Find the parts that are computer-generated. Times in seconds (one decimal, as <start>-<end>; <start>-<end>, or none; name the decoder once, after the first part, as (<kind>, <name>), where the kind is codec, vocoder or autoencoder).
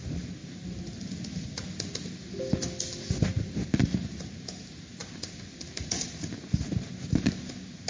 none